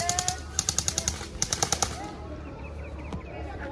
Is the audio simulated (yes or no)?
no